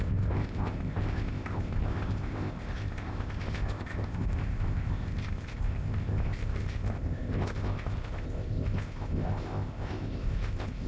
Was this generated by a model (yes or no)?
yes